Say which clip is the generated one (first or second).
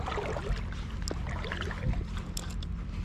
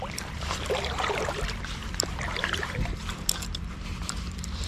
second